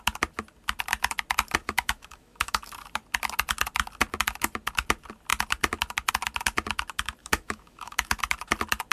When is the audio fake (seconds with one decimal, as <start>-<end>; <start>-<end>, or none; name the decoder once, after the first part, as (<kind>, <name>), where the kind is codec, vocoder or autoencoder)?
1.6-2.7 (autoencoder, DAC-VAE); 7.2-8.2